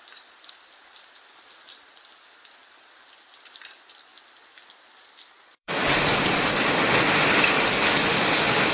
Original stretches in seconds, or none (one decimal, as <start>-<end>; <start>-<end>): 0.0-4.1; 6.8-8.7